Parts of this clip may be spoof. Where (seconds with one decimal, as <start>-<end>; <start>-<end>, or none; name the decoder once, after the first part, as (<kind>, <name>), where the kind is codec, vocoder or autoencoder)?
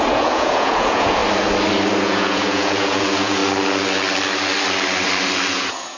0.0-1.2 (vocoder, Vocos); 2.0-3.4; 5.5-6.0